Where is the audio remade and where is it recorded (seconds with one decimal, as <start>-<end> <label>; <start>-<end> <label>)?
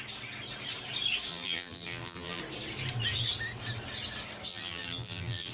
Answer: 0.0-1.3 recorded; 1.3-2.4 remade; 2.4-4.5 recorded; 4.5-5.5 remade